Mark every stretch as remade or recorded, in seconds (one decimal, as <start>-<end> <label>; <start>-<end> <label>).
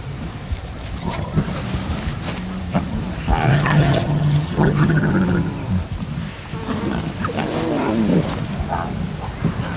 0.0-1.0 recorded; 1.0-1.5 remade; 1.5-3.5 recorded; 3.5-5.1 remade; 5.1-9.8 recorded